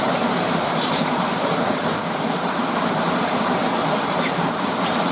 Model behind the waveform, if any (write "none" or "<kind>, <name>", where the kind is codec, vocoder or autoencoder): vocoder, BigVGAN v2